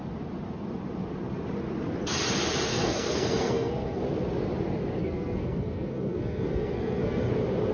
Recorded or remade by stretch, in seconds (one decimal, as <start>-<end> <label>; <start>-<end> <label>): 0.0-2.7 recorded; 2.7-4.0 remade; 4.0-5.0 recorded; 5.0-7.3 remade; 7.3-7.7 recorded